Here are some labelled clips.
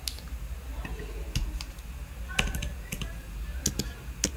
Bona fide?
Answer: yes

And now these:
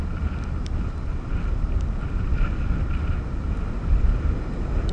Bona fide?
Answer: yes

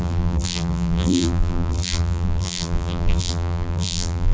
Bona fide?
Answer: no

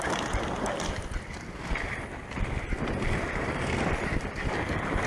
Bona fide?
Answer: no